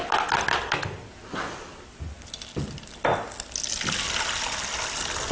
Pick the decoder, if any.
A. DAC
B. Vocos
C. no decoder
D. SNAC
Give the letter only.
C